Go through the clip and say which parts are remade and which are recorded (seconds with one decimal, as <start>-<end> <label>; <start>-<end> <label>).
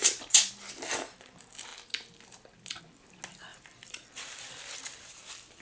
0.0-0.5 remade; 0.5-3.5 recorded; 3.5-5.6 remade